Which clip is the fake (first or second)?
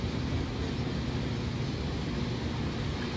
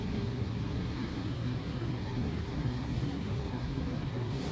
second